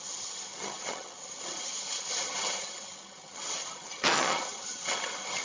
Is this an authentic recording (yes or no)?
no